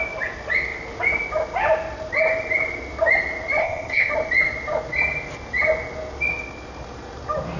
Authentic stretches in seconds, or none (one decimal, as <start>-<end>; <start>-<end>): 0.0-3.6; 4.1-7.6